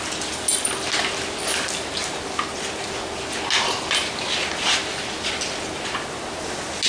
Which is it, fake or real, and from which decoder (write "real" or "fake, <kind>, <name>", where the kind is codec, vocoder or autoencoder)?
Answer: real